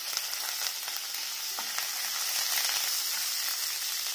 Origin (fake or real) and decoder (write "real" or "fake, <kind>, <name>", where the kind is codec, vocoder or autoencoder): real